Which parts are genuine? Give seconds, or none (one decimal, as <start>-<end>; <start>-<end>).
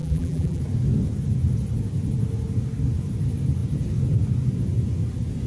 0.6-5.5